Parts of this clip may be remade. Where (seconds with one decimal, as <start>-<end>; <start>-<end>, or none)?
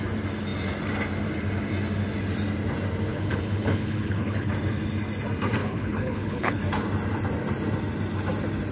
3.1-4.5; 5.6-6.6